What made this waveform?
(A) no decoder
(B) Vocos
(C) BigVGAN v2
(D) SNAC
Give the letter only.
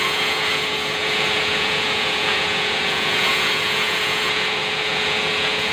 B